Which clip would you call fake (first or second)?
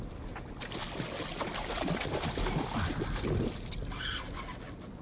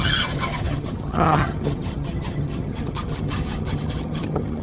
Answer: second